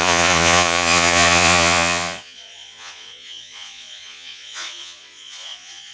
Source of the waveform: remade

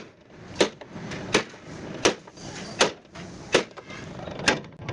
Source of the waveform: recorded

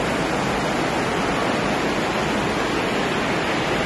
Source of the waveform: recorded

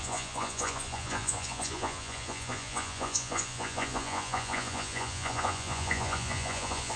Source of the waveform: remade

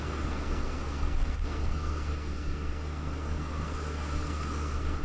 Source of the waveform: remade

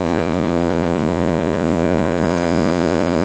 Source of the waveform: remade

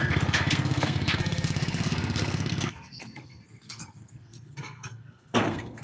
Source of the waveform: remade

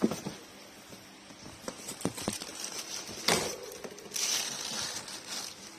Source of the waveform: recorded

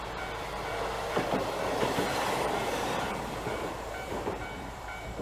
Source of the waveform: remade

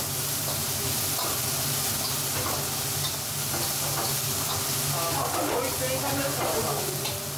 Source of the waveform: recorded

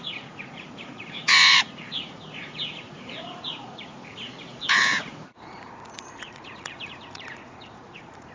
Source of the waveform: remade